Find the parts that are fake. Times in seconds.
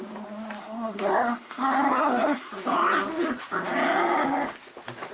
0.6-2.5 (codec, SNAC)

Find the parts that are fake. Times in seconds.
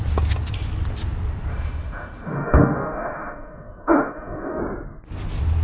1.5-4.6 (autoencoder, DAC-VAE)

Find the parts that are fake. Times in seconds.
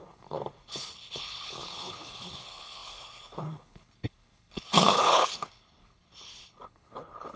0.0-7.4 (codec, HILCodec)